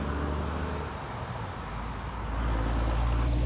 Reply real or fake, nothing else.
real